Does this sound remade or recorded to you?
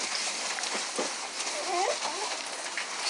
recorded